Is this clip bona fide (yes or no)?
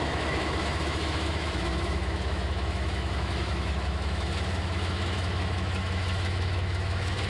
no